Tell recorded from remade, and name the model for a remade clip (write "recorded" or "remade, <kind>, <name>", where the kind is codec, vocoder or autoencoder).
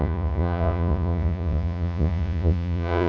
remade, vocoder, Vocos